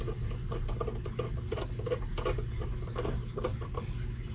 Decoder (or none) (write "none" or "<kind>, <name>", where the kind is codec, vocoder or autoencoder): none